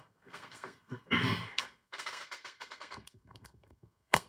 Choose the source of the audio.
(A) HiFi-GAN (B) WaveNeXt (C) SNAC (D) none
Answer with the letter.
C